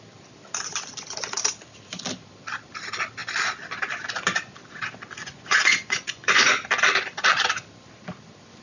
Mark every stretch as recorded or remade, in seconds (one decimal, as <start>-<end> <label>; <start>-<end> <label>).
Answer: 0.0-5.2 recorded; 5.2-6.5 remade; 6.5-8.6 recorded